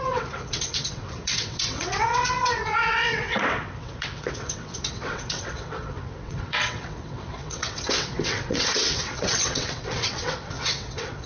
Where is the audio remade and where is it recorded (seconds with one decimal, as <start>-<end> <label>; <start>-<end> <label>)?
0.0-11.3 remade